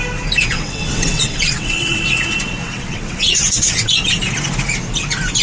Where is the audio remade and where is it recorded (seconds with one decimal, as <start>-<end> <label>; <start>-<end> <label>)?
0.0-0.4 recorded; 0.4-2.0 remade; 2.0-2.6 recorded; 2.6-4.2 remade; 4.2-5.4 recorded